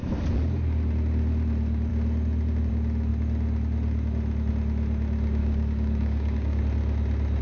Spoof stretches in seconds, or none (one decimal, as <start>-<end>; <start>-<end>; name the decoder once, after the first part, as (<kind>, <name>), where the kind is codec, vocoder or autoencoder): 5.4-6.6 (codec, DAC)